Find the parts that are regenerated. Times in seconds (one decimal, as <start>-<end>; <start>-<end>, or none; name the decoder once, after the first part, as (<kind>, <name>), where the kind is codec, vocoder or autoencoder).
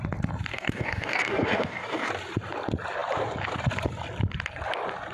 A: 0.5-2.1 (codec, DAC)